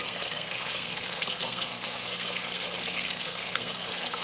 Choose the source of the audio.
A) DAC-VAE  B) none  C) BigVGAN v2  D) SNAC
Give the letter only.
D